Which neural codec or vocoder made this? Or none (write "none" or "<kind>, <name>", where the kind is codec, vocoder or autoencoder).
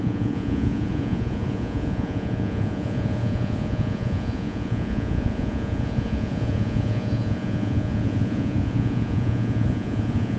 vocoder, Vocos